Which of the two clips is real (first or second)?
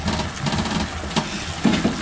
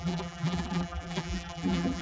first